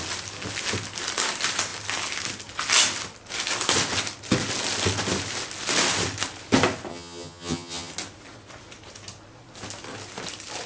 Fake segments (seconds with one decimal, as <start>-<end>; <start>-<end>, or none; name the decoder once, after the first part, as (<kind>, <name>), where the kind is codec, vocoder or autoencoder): 6.9-7.9 (vocoder, HiFi-GAN)